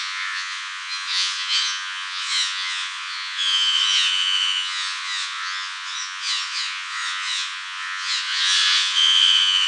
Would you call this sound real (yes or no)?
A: no